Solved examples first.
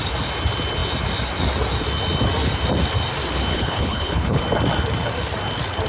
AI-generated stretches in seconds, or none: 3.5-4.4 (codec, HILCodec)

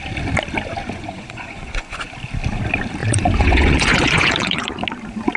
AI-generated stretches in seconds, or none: 0.8-2.1 (vocoder, Vocos); 3.0-4.8

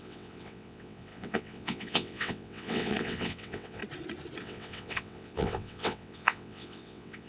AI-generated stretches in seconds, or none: 0.0-3.8 (vocoder, WaveNeXt); 4.4-7.3

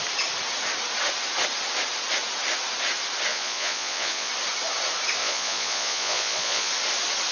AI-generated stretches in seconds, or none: 3.3-4.3 (vocoder, Vocos); 5.2-6.7